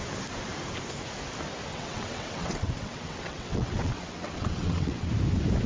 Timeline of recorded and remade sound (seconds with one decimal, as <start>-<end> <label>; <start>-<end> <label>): 0.0-1.7 recorded; 1.7-5.1 remade; 5.1-5.7 recorded